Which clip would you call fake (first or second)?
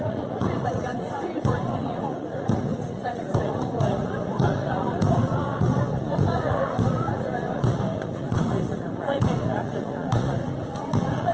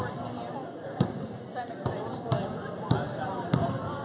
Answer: first